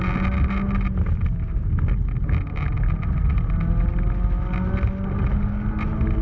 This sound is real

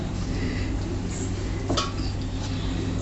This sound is real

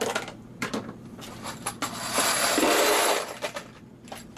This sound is fake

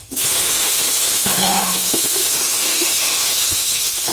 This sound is fake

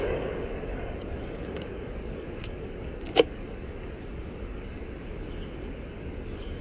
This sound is fake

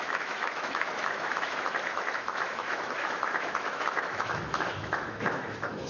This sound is fake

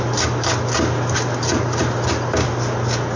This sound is real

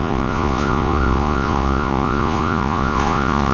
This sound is fake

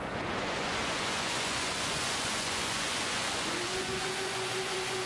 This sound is fake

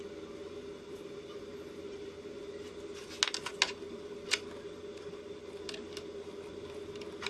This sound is real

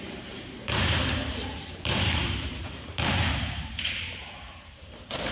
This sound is fake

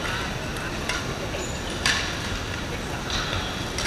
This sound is real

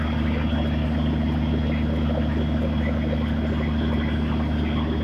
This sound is real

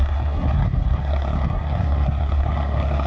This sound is fake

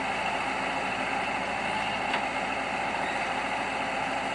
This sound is real